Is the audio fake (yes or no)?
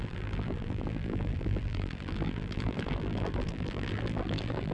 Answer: yes